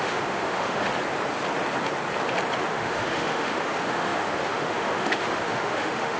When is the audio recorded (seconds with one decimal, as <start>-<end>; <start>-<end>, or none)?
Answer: 0.9-2.6